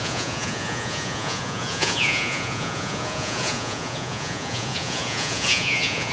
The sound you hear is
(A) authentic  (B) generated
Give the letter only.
B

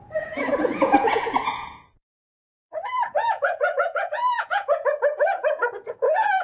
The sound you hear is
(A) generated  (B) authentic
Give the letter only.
A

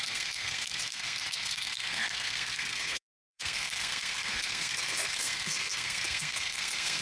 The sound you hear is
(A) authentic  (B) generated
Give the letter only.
B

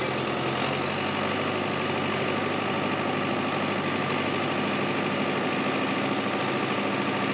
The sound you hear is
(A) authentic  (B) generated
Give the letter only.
A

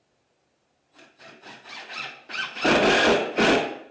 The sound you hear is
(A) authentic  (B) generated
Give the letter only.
A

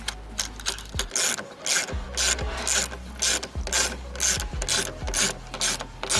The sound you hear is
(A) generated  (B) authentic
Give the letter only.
B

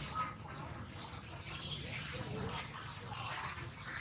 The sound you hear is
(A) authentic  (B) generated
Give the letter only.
A